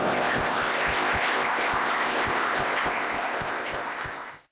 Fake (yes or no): yes